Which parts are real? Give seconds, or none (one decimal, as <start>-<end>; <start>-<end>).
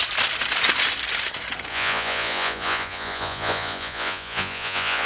0.0-1.7